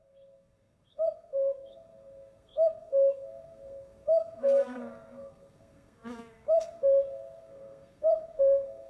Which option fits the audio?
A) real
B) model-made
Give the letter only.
B